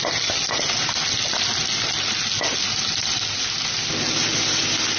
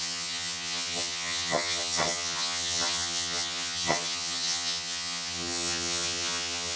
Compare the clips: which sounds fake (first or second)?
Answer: second